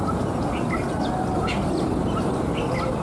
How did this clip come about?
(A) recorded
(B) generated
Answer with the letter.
A